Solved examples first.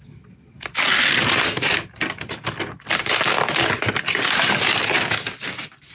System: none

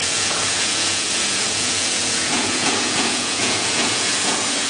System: vocoder, Vocos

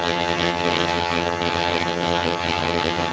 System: vocoder, HiFi-GAN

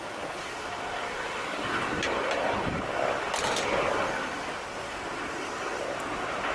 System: none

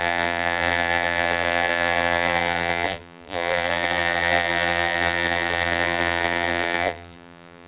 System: vocoder, BigVGAN v2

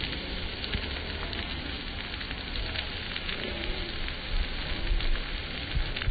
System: none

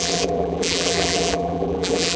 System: vocoder, BigVGAN v2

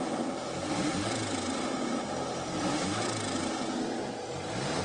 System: none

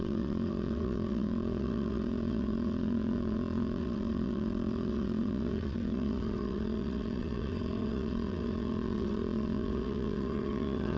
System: vocoder, WaveNeXt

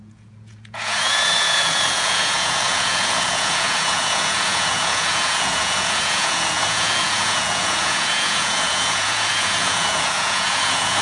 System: vocoder, Vocos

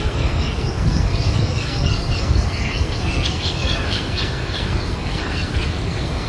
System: codec, SNAC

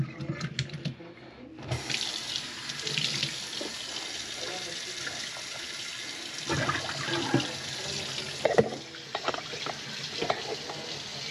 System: none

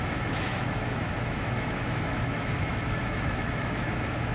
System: autoencoder, DAC-VAE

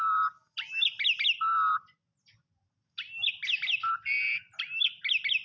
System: none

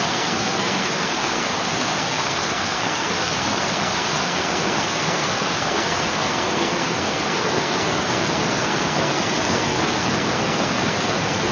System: codec, SNAC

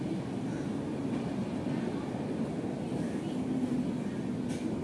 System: none